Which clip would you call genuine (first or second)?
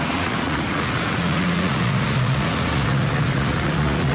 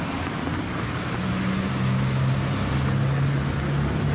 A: second